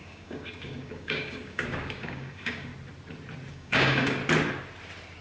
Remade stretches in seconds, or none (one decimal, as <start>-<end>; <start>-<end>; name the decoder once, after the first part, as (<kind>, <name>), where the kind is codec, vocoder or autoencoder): 0.0-2.7 (codec, DAC); 3.5-4.2